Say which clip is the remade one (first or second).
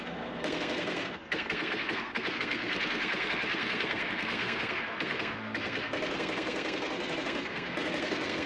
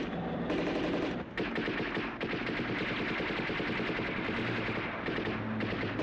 first